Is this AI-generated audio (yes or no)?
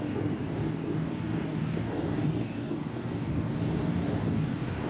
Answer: yes